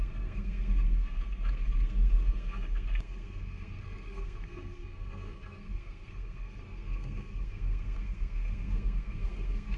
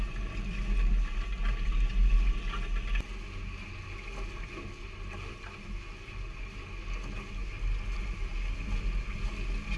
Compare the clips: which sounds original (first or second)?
second